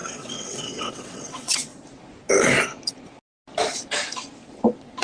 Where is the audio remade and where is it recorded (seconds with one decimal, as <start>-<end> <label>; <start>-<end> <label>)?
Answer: 0.0-1.7 remade; 1.7-5.0 recorded